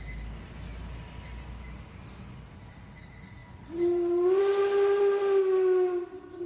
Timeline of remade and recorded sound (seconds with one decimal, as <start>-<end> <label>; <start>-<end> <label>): 0.0-6.5 recorded